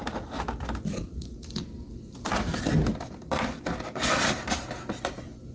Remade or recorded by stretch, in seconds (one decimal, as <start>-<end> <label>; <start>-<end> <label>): 0.0-5.5 recorded